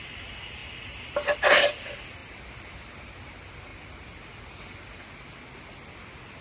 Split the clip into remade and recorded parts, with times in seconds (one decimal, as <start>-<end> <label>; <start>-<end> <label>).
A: 0.0-6.4 recorded